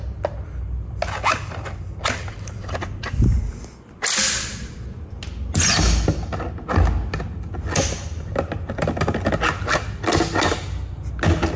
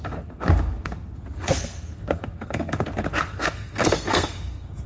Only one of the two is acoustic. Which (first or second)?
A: first